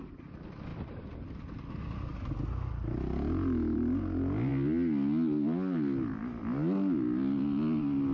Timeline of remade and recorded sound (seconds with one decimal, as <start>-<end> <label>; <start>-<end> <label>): 0.0-8.1 recorded